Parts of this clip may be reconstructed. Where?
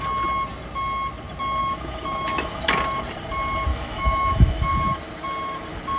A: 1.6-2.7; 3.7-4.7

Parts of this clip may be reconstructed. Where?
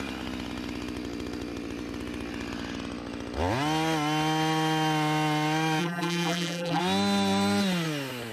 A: 5.8-6.8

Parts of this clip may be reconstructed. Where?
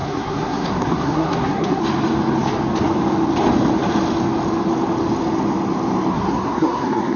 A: 0.0-1.8; 6.1-7.2